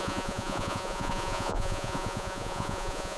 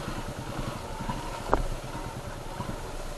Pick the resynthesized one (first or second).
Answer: first